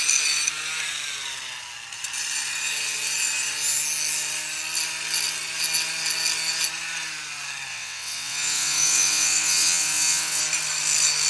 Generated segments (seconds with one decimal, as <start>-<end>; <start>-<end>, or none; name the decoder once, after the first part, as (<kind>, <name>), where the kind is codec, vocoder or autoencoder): 7.7-10.4 (vocoder, WaveNeXt)